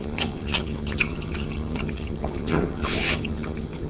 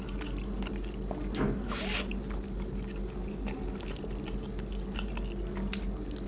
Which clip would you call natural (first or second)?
second